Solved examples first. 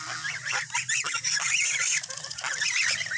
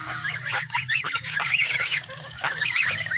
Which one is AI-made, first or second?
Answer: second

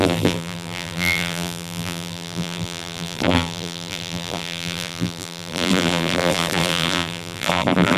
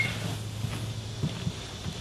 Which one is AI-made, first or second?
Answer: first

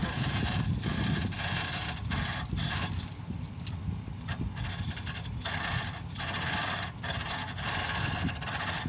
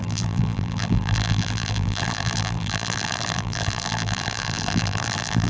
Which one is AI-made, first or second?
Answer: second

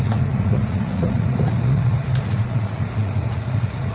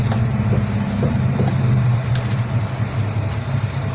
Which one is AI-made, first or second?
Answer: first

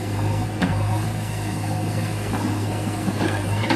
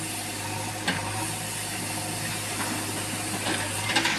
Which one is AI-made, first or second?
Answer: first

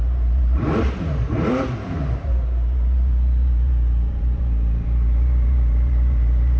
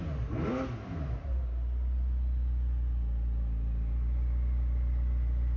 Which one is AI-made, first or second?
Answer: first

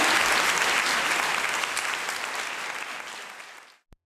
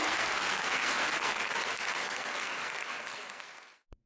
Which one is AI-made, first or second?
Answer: second